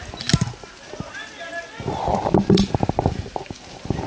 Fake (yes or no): no